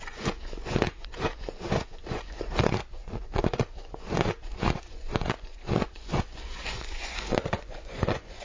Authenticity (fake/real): fake